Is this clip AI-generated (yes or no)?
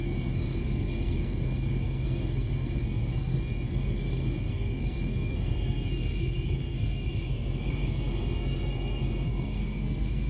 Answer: yes